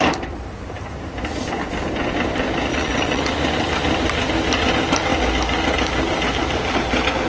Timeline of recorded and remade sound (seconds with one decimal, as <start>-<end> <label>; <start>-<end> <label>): 0.0-2.7 recorded; 2.7-3.2 remade; 3.2-7.3 recorded